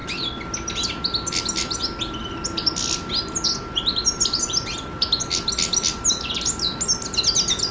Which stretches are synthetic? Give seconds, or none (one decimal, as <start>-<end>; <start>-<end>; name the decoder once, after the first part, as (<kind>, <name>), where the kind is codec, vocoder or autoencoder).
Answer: none